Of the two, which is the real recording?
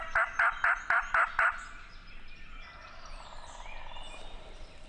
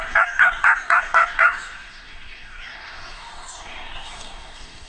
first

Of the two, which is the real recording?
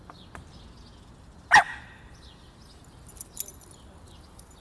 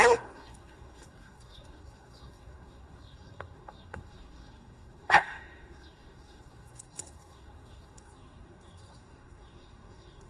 first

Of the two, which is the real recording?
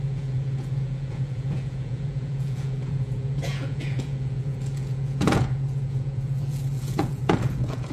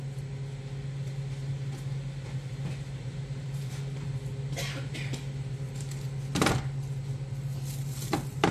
second